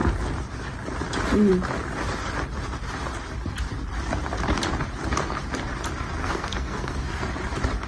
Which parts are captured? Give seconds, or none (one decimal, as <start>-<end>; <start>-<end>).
0.0-6.2; 7.3-7.9